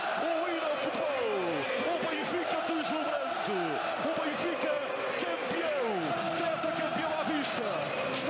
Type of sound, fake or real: real